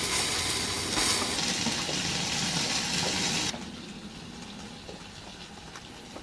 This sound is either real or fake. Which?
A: real